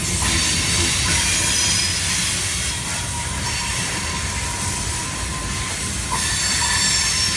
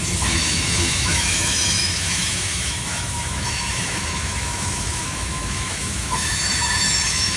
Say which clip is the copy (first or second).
second